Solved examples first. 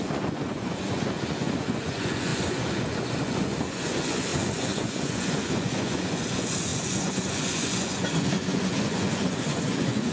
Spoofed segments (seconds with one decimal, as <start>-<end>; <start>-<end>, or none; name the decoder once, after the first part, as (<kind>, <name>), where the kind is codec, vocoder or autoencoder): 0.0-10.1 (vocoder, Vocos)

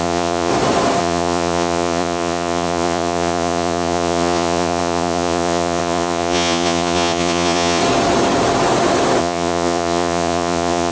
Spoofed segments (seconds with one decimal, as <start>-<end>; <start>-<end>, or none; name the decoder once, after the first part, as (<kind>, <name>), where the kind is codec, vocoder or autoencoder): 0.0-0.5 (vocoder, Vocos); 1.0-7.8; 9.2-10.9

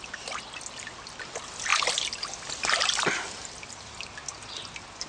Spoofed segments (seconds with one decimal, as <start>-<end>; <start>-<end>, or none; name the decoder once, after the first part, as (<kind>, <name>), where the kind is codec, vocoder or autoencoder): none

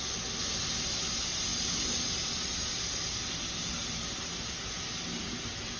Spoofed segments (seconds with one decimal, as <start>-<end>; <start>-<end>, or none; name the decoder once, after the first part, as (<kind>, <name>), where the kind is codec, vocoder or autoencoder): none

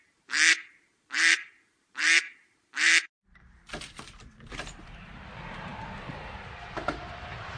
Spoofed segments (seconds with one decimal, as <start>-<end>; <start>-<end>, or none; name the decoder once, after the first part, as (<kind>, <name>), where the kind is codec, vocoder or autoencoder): 0.0-2.9 (vocoder, BigVGAN v2); 4.5-7.6

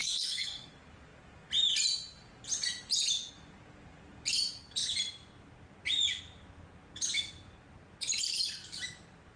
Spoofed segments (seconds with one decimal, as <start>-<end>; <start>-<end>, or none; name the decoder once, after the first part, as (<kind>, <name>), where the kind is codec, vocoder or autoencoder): 0.0-0.7 (codec, SNAC)